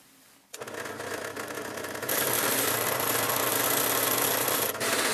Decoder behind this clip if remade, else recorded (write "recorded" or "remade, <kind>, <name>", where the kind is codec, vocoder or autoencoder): recorded